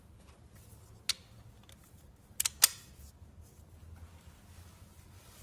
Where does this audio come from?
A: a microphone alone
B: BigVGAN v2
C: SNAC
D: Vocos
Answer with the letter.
A